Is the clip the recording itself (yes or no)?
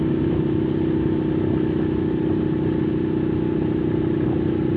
yes